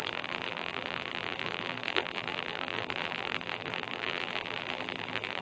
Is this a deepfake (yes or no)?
yes